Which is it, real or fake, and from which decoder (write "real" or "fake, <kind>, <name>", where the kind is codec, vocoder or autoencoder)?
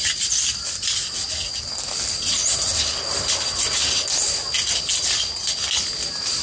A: real